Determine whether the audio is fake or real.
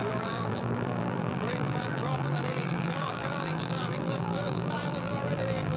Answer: fake